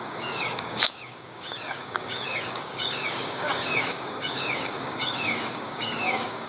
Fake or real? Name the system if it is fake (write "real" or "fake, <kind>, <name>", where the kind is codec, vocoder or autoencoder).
fake, codec, DAC